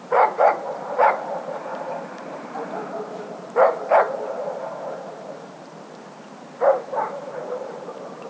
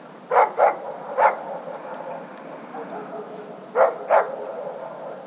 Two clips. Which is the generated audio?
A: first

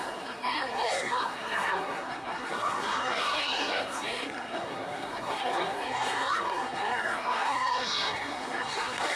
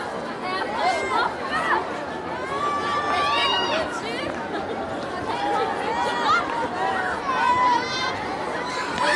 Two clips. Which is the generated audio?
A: first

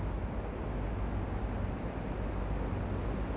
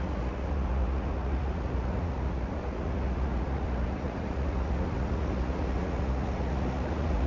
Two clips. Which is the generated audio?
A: second